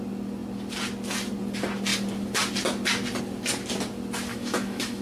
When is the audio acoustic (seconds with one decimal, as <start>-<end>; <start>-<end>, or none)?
0.0-4.3